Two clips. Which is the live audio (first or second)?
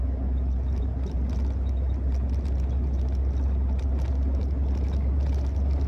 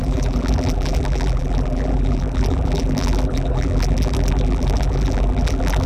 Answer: first